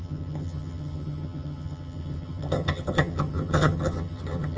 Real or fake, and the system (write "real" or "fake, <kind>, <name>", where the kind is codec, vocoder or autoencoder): fake, vocoder, HiFi-GAN